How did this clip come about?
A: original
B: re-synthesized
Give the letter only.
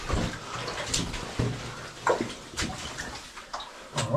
A